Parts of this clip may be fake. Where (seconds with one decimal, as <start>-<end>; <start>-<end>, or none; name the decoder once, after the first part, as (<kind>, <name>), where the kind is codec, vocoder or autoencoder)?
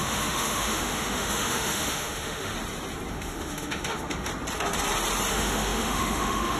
0.0-2.5 (autoencoder, DAC-VAE); 3.1-4.3; 5.3-6.6